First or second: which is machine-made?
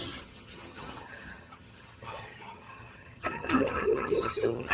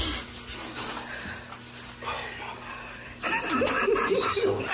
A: first